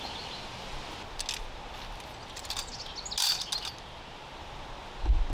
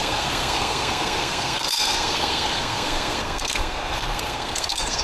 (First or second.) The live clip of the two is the first